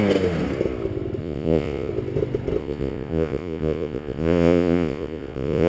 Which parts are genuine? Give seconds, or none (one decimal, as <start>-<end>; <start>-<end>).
0.0-1.2; 1.9-2.6